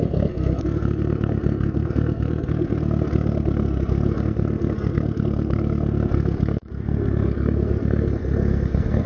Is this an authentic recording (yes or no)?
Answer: no